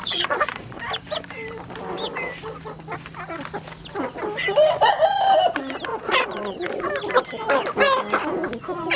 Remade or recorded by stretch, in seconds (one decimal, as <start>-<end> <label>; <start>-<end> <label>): 0.0-0.8 remade; 0.8-5.9 recorded; 5.9-6.9 remade; 6.9-9.0 recorded